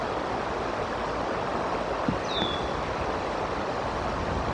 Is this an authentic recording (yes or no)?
yes